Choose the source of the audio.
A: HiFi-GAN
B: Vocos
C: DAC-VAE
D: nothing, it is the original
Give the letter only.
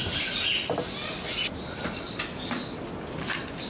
D